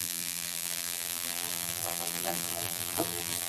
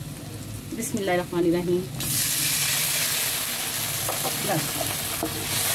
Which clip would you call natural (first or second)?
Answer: second